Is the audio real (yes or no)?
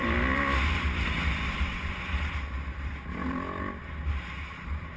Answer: yes